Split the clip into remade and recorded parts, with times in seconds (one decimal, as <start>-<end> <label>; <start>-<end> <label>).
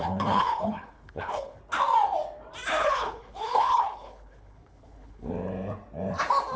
0.0-1.6 remade; 1.6-2.8 recorded; 2.8-5.3 remade; 5.3-6.6 recorded